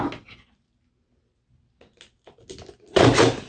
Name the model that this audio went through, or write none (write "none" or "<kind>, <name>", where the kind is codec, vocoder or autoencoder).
none